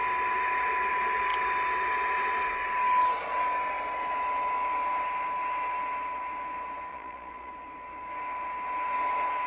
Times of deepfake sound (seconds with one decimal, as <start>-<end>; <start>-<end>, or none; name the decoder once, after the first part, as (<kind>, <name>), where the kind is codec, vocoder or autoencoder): 6.9-7.5 (vocoder, Vocos)